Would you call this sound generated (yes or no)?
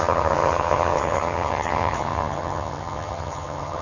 yes